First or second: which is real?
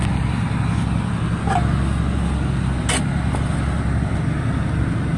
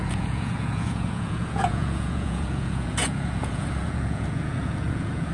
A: first